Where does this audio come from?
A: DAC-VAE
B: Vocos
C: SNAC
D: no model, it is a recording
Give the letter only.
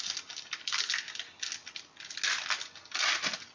D